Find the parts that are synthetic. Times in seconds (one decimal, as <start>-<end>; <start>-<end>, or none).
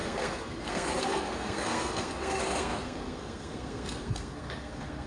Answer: 0.0-5.1